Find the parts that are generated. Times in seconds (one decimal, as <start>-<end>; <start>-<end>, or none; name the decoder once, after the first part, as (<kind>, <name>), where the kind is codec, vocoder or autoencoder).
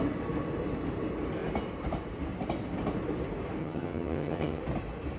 3.6-4.6 (vocoder, HiFi-GAN)